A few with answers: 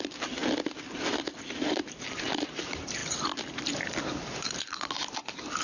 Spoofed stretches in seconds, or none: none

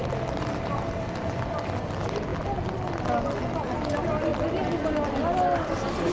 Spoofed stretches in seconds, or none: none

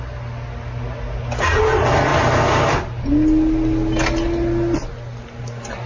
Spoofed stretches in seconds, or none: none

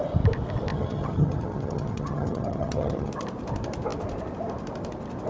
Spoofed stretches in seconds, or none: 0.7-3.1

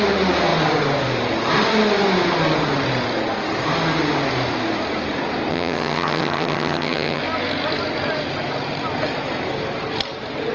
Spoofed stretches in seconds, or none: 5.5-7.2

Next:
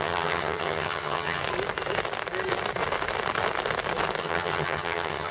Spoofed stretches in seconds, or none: 0.0-1.4; 4.2-5.3

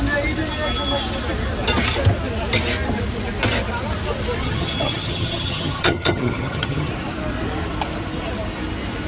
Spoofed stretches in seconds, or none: 4.4-6.9

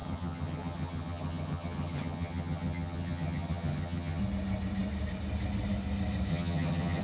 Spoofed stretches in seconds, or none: 0.0-4.2; 6.3-7.0